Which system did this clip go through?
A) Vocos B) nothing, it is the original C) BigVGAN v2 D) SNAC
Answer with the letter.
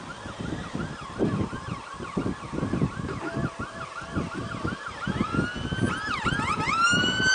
B